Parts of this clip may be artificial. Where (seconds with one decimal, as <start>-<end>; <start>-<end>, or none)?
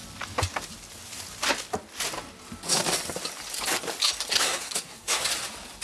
4.3-5.2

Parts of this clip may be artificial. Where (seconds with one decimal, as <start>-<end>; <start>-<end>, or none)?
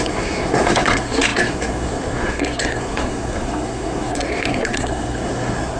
0.0-5.8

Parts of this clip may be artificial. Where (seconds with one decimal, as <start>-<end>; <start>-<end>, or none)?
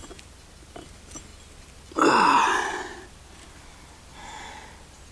none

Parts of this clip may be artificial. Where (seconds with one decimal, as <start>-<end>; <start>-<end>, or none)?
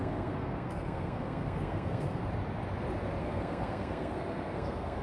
0.0-2.2; 3.2-5.0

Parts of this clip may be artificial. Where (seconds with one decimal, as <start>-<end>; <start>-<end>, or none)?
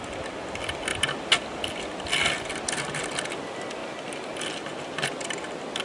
none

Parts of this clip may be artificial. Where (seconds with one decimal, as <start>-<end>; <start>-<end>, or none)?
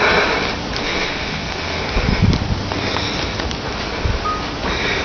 0.8-1.8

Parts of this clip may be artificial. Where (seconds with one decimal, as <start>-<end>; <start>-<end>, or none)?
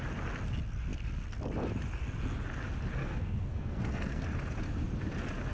3.0-4.2